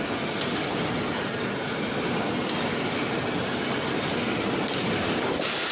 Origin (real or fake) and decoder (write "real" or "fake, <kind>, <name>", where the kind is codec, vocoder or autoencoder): real